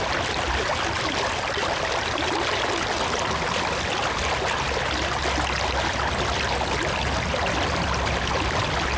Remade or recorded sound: recorded